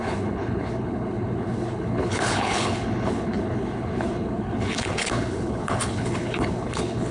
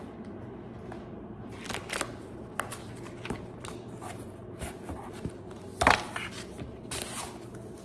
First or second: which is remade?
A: first